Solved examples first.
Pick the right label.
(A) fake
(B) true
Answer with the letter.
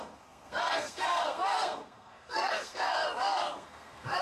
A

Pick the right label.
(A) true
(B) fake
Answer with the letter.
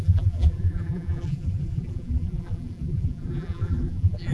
B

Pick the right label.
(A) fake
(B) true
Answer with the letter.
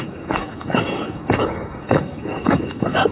A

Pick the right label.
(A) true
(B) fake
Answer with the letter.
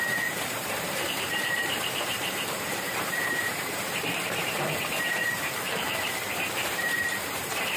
B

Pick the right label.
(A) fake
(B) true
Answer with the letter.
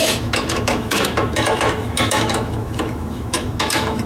A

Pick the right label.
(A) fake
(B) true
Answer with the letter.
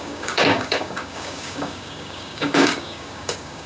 A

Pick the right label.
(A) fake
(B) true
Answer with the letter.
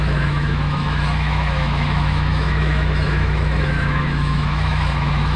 A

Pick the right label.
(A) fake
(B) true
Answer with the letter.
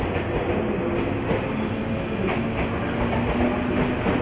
B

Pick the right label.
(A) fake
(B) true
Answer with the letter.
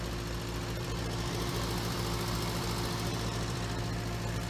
B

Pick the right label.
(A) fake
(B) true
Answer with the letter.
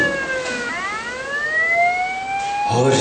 B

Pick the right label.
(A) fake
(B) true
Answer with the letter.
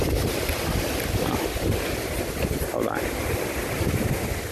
B